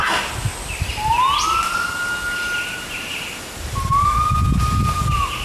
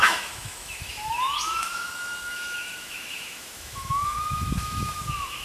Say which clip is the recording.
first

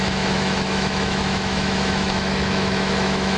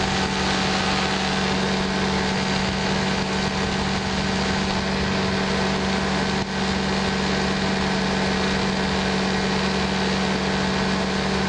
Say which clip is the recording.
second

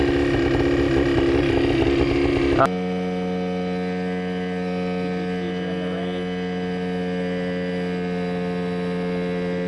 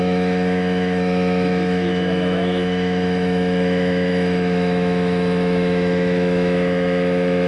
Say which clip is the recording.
first